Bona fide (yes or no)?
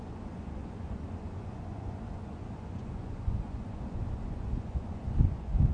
no